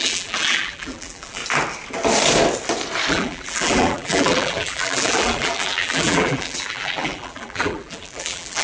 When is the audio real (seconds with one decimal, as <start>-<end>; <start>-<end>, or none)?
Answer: 1.4-3.1